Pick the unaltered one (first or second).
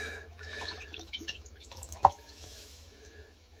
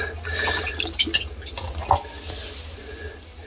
second